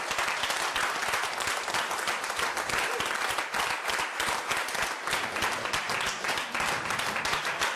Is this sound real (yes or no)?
yes